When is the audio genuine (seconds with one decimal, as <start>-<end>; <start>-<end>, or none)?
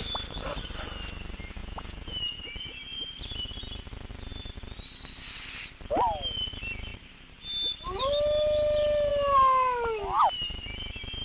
0.0-1.6; 2.4-11.2